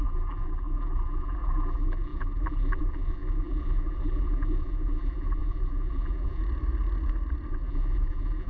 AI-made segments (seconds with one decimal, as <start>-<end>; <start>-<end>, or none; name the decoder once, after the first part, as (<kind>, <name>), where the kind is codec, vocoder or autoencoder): 0.0-6.4 (vocoder, BigVGAN v2); 7.5-8.5